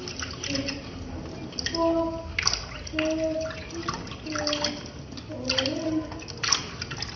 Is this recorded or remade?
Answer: recorded